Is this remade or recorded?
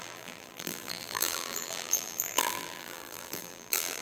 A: remade